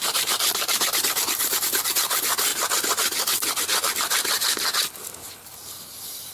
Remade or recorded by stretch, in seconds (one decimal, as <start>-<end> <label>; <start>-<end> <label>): 0.0-2.5 remade; 2.5-5.7 recorded; 5.7-6.3 remade